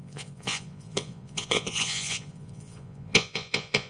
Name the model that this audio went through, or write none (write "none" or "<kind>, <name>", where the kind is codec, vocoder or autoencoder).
vocoder, Vocos